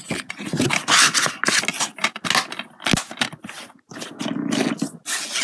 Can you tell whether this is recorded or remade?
recorded